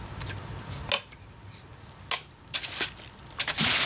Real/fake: real